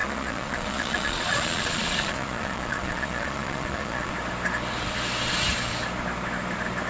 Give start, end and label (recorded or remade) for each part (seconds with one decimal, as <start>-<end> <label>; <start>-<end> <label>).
0.0-4.1 remade; 4.1-6.9 recorded